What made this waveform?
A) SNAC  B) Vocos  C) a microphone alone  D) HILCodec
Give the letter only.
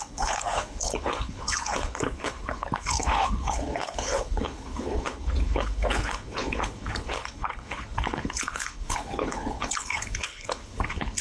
D